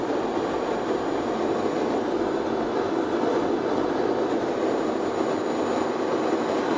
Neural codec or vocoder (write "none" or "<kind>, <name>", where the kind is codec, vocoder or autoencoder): none